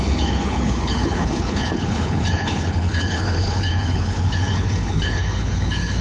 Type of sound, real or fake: fake